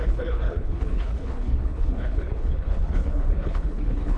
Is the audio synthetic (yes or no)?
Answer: yes